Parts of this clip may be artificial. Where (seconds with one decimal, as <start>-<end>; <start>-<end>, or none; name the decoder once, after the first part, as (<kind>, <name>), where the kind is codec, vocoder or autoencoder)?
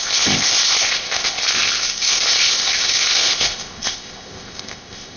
0.0-5.2 (codec, ZipCodec)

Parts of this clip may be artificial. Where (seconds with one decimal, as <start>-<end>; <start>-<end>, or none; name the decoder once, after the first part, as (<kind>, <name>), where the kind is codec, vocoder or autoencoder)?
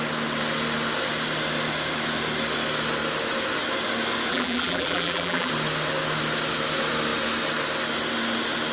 4.3-5.5 (vocoder, BigVGAN v2)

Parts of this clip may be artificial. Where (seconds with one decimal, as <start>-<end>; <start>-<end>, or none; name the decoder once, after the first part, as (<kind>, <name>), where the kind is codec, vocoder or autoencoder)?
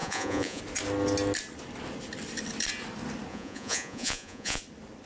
0.0-0.6 (vocoder, Vocos); 3.3-4.6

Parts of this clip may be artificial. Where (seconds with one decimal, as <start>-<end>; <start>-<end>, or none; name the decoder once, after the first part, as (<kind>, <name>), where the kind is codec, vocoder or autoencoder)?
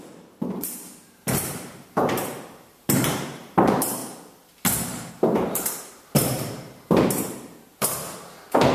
0.0-4.0 (vocoder, BigVGAN v2); 5.1-8.7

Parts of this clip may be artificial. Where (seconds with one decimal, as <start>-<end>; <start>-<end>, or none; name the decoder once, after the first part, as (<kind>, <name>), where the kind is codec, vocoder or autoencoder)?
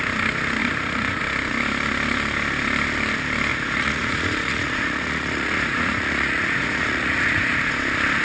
0.6-1.2 (vocoder, Vocos); 3.5-7.7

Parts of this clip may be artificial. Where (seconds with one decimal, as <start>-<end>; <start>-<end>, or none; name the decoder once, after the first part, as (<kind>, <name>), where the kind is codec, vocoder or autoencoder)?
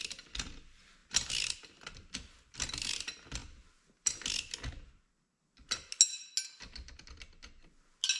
none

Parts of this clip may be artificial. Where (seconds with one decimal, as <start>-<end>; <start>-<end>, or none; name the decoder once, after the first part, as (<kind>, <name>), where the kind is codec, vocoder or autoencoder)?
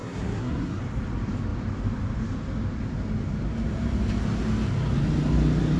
0.0-0.8 (codec, SNAC)